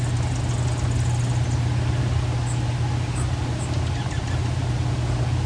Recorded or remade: recorded